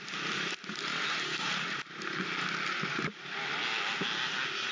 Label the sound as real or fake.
real